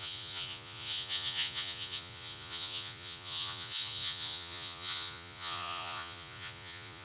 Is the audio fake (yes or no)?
yes